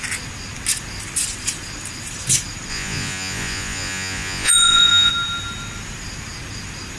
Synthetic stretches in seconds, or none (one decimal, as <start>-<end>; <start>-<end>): 2.7-5.1